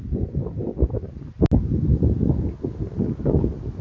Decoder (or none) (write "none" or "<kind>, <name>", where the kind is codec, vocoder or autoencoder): none